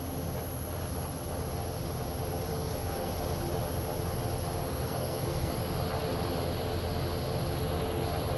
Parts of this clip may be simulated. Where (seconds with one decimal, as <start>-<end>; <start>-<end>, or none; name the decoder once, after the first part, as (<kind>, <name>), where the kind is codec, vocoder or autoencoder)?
2.5-3.1 (codec, SNAC); 4.6-5.6